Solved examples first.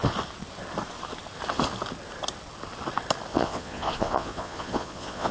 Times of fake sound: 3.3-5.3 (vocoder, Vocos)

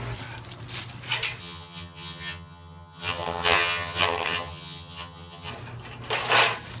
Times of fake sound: 1.4-5.5 (vocoder, HiFi-GAN)